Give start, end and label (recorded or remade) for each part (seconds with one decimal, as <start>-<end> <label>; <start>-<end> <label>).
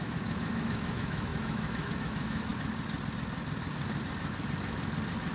0.0-2.5 remade; 2.5-5.3 recorded